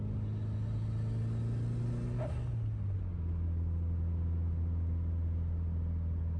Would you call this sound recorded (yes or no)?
yes